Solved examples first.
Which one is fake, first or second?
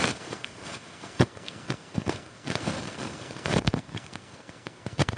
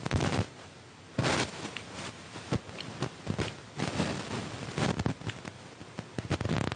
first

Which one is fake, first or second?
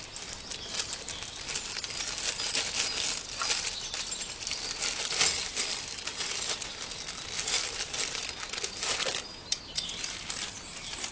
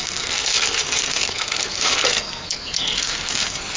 second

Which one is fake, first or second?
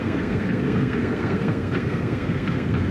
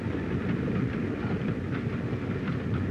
first